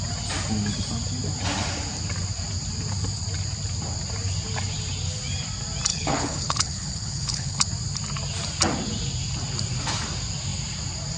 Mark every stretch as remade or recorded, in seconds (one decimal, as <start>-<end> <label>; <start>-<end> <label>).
0.0-5.9 recorded; 5.9-7.6 remade; 7.6-11.2 recorded